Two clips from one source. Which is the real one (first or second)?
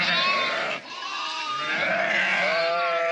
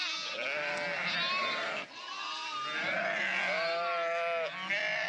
second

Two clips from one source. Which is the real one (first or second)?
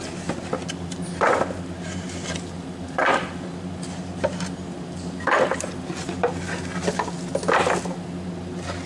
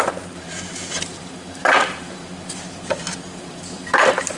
first